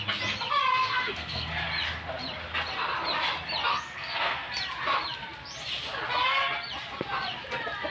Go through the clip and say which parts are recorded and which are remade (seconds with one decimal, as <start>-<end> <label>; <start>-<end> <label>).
0.0-0.7 recorded; 0.7-1.5 remade; 1.5-3.7 recorded; 3.7-4.5 remade; 4.5-7.9 recorded